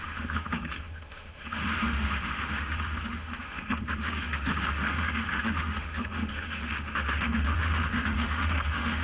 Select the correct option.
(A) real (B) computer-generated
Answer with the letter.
B